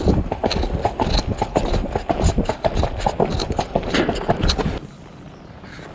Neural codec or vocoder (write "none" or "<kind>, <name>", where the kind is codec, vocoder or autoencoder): none